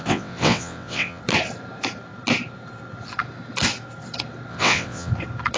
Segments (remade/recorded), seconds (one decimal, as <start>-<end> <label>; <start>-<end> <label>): 0.0-1.2 remade; 1.2-4.5 recorded; 4.5-5.1 remade; 5.1-5.6 recorded